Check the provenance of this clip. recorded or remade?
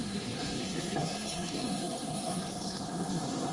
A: remade